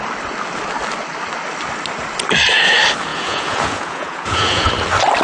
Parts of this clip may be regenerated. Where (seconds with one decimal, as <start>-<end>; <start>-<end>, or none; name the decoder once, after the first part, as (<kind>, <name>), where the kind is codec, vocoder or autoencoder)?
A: 3.1-4.7 (vocoder, Vocos)